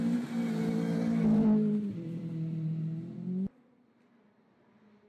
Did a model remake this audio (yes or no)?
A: no